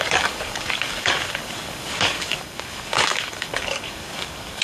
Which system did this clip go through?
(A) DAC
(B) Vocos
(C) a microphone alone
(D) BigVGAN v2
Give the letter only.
A